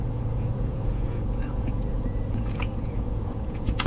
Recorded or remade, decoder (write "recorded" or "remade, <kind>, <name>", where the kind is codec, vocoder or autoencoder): remade, vocoder, Vocos